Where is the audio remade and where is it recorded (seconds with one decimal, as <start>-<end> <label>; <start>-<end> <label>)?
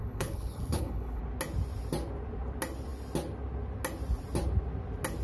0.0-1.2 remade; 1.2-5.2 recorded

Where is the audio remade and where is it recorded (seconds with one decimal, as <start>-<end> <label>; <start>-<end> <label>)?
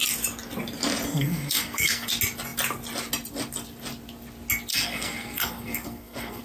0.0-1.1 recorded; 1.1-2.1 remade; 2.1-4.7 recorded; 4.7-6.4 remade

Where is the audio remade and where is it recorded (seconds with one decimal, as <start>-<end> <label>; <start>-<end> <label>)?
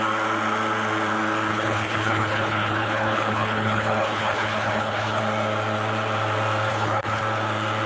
0.0-1.5 recorded; 1.5-5.2 remade; 5.2-6.7 recorded; 6.7-7.2 remade; 7.2-7.9 recorded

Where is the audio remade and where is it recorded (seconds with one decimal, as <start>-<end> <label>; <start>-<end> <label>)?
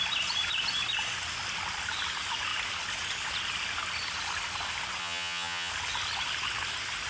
0.0-5.0 recorded; 5.0-5.7 remade; 5.7-7.1 recorded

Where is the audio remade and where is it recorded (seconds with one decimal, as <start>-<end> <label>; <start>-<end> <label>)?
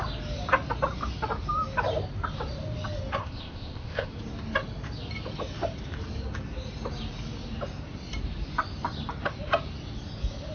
0.0-3.2 recorded; 3.2-4.1 remade; 4.1-10.5 recorded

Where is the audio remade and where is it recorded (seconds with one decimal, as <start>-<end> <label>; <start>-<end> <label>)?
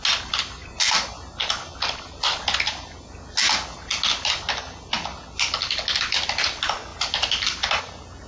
0.0-8.3 recorded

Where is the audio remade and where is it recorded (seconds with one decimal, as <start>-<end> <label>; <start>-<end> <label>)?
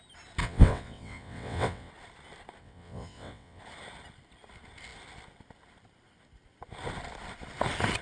0.0-0.4 recorded; 0.4-1.9 remade; 1.9-2.6 recorded; 2.6-3.6 remade; 3.6-8.0 recorded